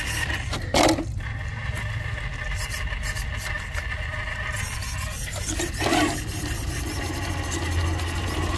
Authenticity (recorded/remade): recorded